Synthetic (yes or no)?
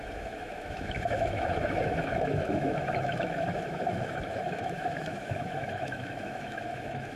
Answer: yes